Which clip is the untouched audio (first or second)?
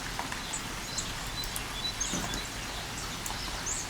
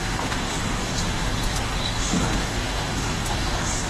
first